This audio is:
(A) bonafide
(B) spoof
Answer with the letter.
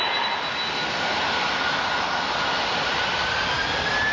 A